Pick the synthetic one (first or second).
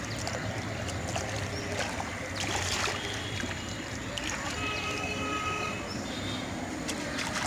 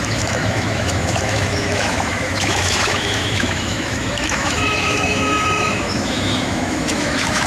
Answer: second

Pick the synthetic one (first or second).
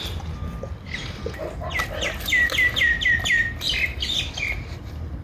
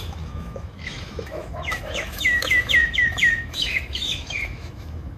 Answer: second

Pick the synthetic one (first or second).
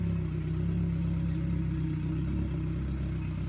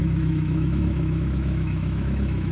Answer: second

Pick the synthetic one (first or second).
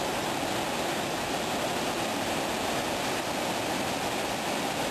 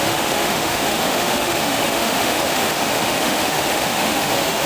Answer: second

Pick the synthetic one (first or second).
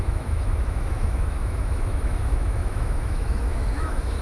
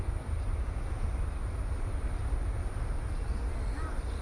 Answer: first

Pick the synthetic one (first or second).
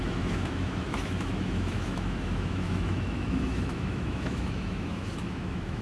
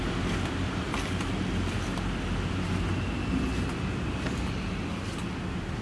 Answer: first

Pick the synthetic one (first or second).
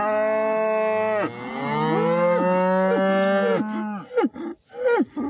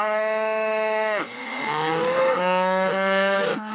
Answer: second